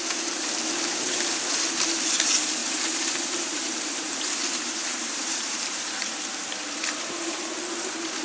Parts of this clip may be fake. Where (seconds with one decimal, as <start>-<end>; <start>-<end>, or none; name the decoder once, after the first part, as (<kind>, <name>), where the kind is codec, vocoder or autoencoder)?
2.6-7.5 (vocoder, BigVGAN v2)